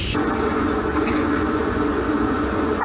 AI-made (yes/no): yes